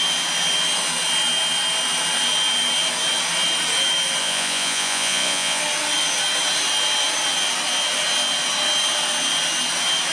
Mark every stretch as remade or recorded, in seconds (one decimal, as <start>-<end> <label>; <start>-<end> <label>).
0.0-4.2 recorded; 4.2-5.6 remade; 5.6-10.1 recorded